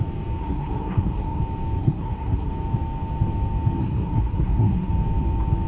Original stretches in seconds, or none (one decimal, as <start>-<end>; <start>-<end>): 0.0-0.4; 1.4-1.8; 2.5-3.8; 4.9-5.7